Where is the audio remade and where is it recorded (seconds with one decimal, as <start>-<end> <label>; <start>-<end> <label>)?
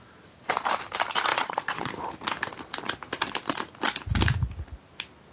0.0-1.3 recorded; 1.3-1.9 remade; 1.9-5.3 recorded